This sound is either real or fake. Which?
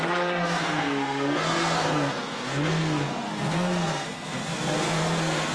fake